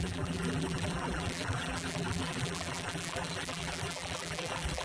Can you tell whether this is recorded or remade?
remade